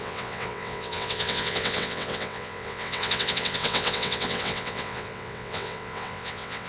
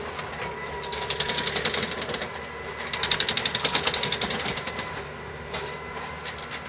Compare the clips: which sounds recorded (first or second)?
second